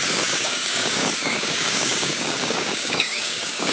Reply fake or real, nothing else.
fake